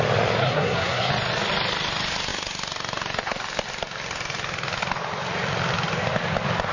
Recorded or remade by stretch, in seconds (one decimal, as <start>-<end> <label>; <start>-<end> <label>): 0.0-0.4 recorded; 0.4-1.1 remade; 1.1-6.7 recorded